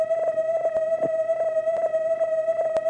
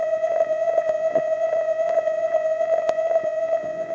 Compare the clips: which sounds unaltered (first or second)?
first